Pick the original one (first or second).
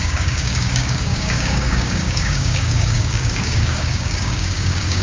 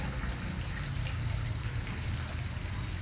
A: second